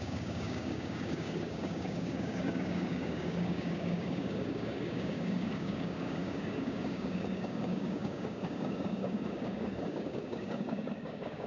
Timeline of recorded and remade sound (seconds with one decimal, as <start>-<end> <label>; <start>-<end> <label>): 0.0-11.5 remade